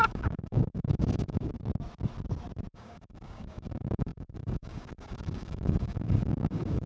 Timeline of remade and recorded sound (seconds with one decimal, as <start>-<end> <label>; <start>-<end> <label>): 0.0-1.5 remade; 1.5-2.7 recorded; 2.7-6.9 remade